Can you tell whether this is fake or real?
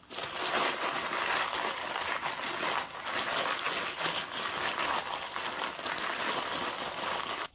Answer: real